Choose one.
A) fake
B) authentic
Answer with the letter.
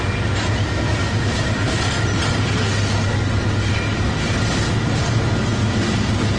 B